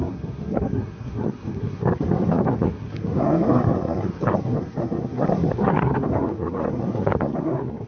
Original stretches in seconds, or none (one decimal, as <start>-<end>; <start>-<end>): none